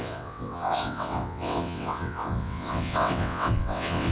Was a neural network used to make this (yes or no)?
yes